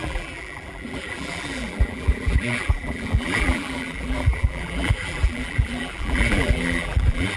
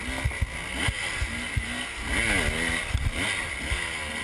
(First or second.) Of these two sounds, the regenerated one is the first